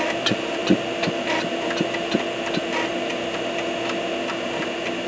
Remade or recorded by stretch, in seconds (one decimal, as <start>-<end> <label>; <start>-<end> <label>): 0.0-5.1 recorded